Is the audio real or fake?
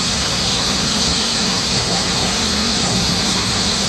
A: fake